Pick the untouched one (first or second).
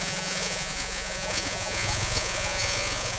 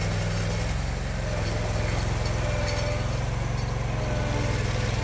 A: second